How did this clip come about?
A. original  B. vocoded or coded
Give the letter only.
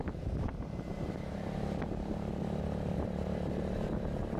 B